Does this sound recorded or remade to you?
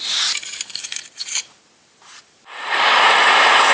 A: remade